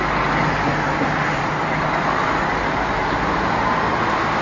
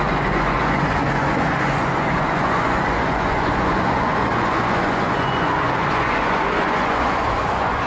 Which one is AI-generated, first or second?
second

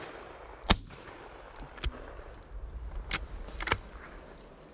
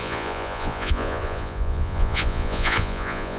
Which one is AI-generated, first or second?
second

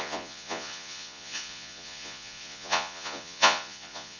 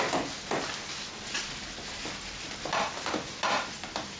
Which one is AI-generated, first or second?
first